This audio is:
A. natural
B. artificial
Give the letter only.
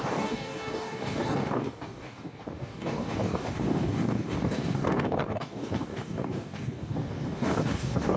B